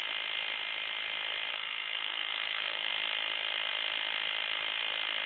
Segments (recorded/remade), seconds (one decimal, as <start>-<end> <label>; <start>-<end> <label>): 0.0-1.5 recorded; 1.5-2.9 remade; 2.9-5.3 recorded